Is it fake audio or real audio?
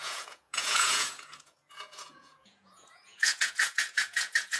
fake